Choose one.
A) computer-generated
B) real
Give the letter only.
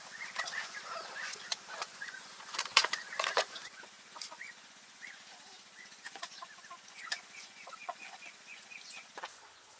A